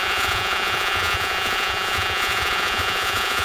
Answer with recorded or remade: remade